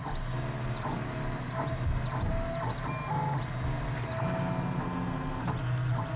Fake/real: real